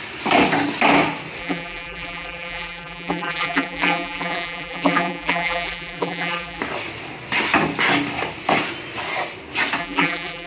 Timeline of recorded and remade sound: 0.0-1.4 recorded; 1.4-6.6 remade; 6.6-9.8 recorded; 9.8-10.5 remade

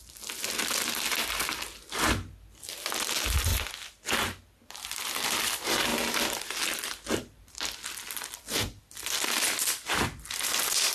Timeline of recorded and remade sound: 0.0-3.5 remade; 3.5-4.7 recorded; 4.7-10.9 remade

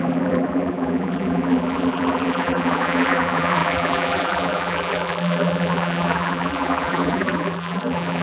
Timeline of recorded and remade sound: 0.0-8.2 remade

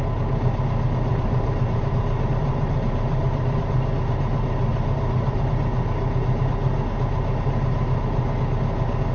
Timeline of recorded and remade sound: 0.0-1.1 recorded; 1.1-3.7 remade; 3.7-4.7 recorded; 4.7-5.4 remade; 5.4-9.1 recorded

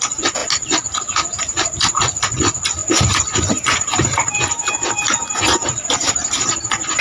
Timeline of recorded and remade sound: 0.0-7.0 recorded

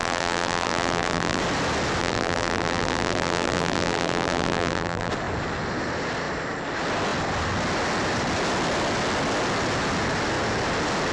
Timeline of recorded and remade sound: 0.0-1.4 remade; 1.4-2.0 recorded; 2.0-5.1 remade; 5.1-11.1 recorded